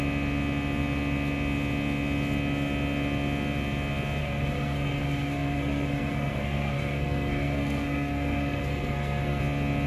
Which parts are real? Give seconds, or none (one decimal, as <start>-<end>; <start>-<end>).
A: 0.0-4.2; 9.4-9.9